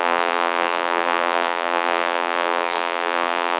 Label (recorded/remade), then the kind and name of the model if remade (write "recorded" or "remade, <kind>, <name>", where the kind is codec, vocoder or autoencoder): remade, vocoder, BigVGAN v2